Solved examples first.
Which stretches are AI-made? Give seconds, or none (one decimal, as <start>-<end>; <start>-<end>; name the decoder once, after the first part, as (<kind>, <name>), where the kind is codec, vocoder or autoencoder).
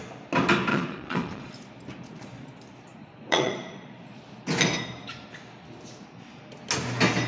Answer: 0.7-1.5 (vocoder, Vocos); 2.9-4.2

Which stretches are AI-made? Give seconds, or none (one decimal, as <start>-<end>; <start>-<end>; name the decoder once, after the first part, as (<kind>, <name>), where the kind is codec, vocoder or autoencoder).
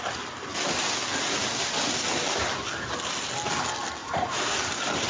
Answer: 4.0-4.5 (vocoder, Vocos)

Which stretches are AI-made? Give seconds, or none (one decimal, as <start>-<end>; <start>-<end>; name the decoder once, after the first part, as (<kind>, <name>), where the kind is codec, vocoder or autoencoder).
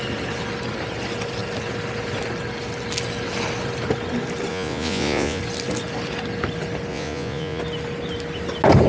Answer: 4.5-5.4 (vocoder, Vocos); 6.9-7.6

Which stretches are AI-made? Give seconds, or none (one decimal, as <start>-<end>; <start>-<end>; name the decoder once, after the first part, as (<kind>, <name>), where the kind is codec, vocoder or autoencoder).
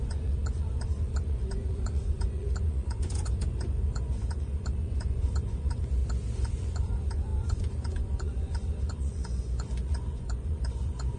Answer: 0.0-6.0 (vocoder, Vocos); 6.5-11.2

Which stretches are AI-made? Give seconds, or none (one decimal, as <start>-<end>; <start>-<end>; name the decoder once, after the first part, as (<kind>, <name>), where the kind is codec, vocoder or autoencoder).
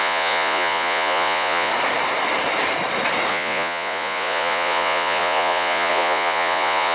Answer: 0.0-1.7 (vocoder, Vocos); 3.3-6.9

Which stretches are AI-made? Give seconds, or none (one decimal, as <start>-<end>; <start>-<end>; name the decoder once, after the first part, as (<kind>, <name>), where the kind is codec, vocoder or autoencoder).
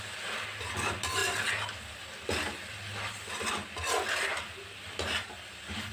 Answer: none